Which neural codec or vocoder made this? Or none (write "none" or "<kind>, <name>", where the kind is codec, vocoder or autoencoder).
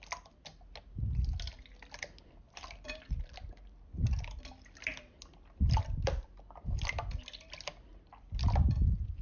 none